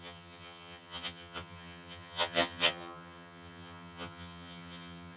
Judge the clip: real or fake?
fake